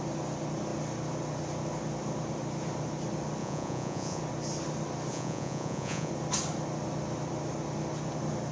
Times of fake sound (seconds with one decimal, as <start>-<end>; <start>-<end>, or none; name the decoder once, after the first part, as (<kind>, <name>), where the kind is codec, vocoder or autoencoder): 3.4-4.2 (vocoder, Vocos); 5.1-6.1